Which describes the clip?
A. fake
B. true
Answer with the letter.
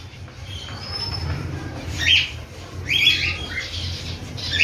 A